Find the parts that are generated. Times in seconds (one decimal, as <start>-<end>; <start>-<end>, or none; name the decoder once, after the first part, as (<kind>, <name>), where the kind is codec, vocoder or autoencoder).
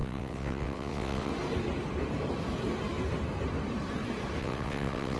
0.0-1.3 (vocoder, WaveNeXt); 4.4-5.2